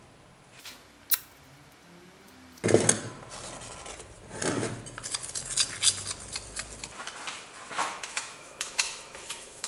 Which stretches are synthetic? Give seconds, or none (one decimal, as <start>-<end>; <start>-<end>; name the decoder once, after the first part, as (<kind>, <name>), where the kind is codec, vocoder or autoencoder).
7.8-9.7 (autoencoder, DAC-VAE)